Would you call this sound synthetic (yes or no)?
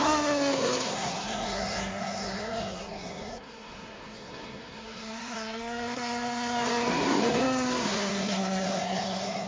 yes